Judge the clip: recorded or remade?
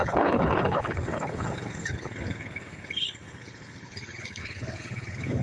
remade